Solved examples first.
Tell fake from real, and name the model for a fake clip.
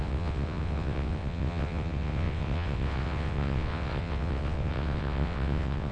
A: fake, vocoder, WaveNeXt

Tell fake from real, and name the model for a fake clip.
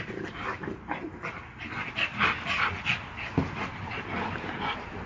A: real